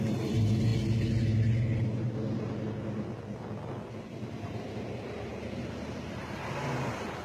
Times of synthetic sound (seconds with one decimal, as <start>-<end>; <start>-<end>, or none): 0.0-0.7; 3.7-5.3; 6.1-7.2

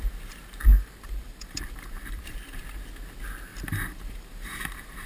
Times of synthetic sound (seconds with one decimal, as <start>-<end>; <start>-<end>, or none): 0.7-2.6; 3.5-5.1

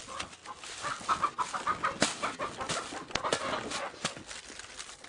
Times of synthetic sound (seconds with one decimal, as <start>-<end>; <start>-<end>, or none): none

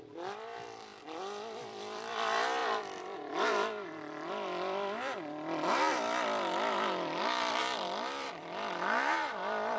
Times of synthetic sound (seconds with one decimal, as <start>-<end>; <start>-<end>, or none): 0.0-9.8

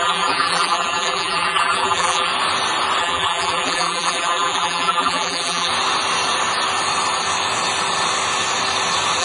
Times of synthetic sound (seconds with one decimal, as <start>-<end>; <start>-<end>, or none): 0.0-2.3; 3.0-5.7

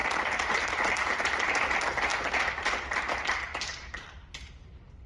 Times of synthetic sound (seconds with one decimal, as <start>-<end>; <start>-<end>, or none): 0.0-1.7; 2.1-2.7; 3.5-4.5

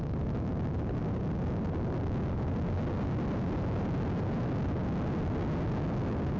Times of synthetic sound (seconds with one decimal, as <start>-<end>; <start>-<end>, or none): none